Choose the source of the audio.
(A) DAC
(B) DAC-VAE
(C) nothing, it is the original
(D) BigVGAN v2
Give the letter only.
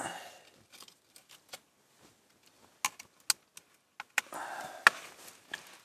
C